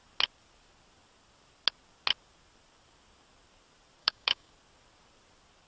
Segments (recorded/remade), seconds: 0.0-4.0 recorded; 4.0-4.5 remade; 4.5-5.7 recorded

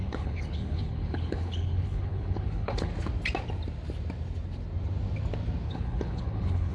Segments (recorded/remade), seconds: 0.0-2.9 remade; 2.9-5.7 recorded; 5.7-6.7 remade

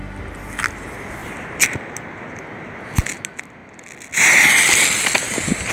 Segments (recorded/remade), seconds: 0.0-5.7 recorded

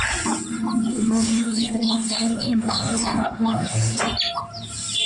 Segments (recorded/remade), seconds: 0.0-0.9 recorded; 0.9-4.0 remade; 4.0-5.1 recorded

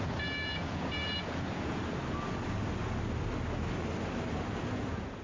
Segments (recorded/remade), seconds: 0.0-1.8 remade; 1.8-4.6 recorded; 4.6-5.2 remade

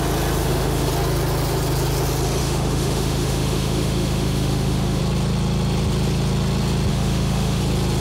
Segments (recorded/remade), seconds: 0.0-0.4 recorded; 0.4-0.9 remade; 0.9-2.4 recorded; 2.4-5.0 remade; 5.0-6.9 recorded; 6.9-7.6 remade; 7.6-8.0 recorded

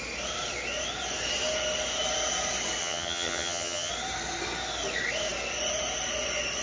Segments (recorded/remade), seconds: 0.0-2.8 recorded; 2.8-3.9 remade; 3.9-6.6 recorded